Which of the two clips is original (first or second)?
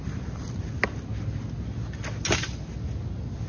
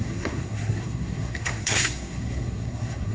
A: first